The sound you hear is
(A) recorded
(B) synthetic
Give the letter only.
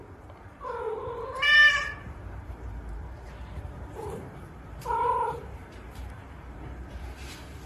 B